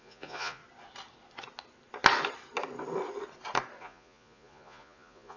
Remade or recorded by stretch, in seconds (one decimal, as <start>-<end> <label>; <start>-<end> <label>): 0.0-0.6 remade; 0.6-3.8 recorded; 3.8-5.4 remade